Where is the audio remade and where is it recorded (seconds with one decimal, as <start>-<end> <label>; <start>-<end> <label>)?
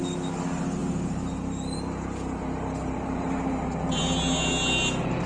0.0-0.8 recorded; 0.8-4.0 remade; 4.0-5.3 recorded